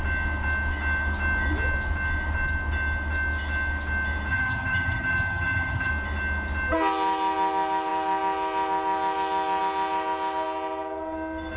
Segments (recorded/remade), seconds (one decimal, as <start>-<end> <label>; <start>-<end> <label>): 0.0-4.3 recorded; 4.3-5.9 remade; 5.9-11.6 recorded